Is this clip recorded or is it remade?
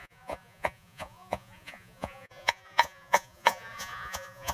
remade